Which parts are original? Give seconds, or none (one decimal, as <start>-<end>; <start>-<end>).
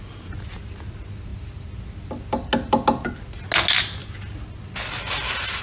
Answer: 0.0-5.6